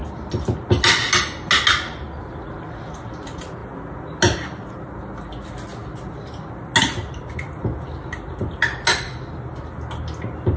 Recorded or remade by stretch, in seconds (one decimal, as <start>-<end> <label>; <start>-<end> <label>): 0.0-10.6 recorded